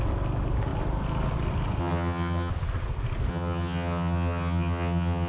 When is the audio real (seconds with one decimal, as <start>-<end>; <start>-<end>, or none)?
0.0-1.8; 2.5-3.3